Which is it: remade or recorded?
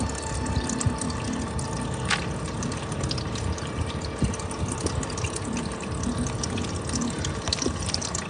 recorded